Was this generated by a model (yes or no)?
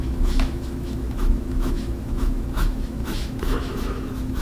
yes